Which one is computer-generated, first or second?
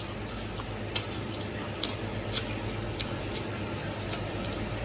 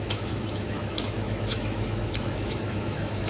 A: second